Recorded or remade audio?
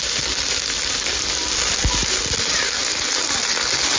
recorded